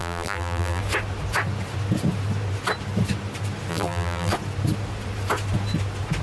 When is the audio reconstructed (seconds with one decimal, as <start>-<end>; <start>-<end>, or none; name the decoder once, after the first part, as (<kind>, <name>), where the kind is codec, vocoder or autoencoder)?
0.0-0.8 (vocoder, BigVGAN v2); 3.7-4.3